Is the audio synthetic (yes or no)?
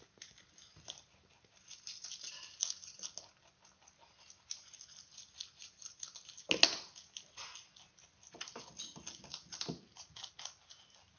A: no